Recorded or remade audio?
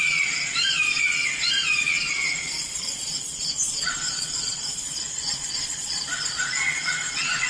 remade